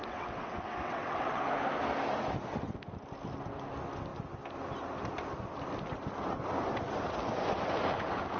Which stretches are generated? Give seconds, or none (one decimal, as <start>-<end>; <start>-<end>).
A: 0.0-1.4